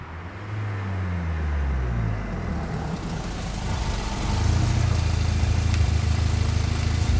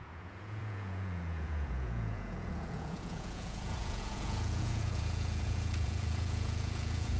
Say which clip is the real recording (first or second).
first